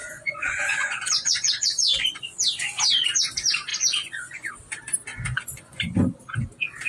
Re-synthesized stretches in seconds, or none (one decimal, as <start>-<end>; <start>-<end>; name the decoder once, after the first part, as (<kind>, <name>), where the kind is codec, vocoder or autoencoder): 0.0-2.0 (vocoder, Vocos); 3.7-4.5; 5.1-5.8